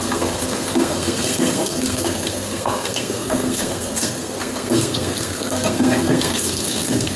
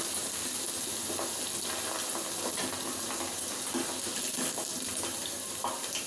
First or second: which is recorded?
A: second